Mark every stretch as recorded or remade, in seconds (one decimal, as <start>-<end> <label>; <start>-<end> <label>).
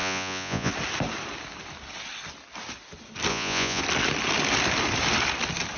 0.0-0.7 remade; 0.7-3.3 recorded; 3.3-3.8 remade; 3.8-5.8 recorded